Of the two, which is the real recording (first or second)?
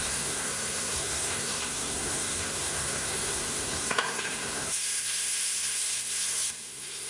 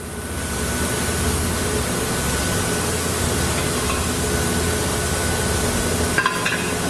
second